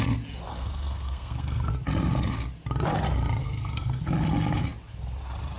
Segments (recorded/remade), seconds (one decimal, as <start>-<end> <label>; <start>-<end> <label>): 0.0-0.5 recorded; 0.5-1.7 remade; 1.7-3.4 recorded; 3.4-4.0 remade; 4.0-5.6 recorded